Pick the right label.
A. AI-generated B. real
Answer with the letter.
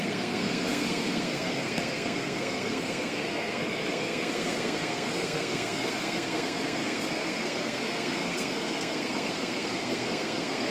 A